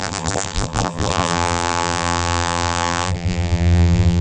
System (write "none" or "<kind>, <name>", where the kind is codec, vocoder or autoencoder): vocoder, BigVGAN v2